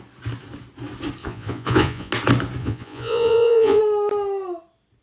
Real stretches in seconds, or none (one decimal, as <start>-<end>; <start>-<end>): 0.0-1.2; 2.1-2.6; 3.8-5.0